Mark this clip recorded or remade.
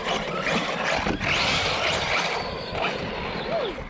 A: recorded